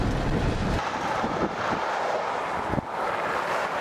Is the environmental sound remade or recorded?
recorded